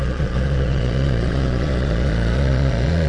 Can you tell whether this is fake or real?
fake